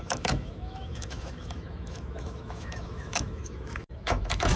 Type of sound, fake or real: fake